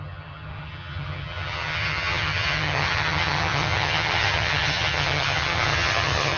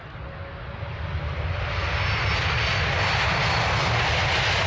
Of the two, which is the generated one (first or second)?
first